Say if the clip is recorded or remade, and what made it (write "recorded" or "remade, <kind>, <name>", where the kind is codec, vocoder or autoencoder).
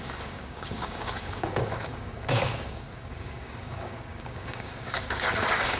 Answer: remade, codec, DAC